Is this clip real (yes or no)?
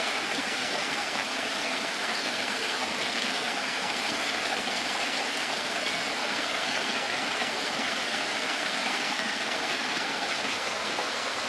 no